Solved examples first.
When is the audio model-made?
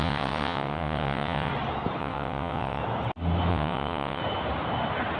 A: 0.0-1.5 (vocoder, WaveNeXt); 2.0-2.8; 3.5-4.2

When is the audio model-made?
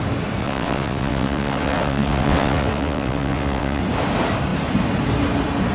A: 0.4-3.8 (vocoder, WaveNeXt)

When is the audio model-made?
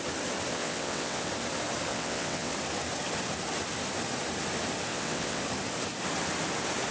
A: 0.5-1.3 (vocoder, WaveNeXt); 1.9-2.5; 4.9-5.4